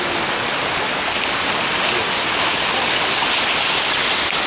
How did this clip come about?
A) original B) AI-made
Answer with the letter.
A